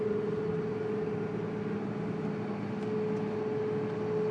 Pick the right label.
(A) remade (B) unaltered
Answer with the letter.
B